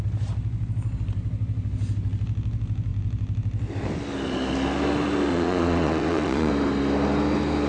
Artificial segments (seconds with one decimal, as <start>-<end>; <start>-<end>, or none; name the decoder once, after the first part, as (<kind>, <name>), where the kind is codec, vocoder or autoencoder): 5.3-6.5 (vocoder, Vocos)